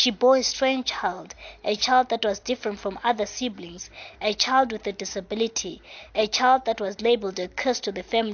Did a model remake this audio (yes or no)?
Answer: no